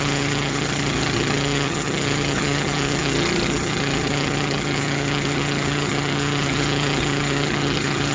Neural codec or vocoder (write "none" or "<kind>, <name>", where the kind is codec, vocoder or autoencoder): vocoder, HiFi-GAN